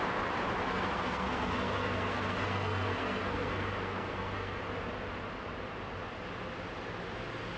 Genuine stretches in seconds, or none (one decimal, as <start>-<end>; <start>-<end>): 0.0-0.6; 4.6-7.6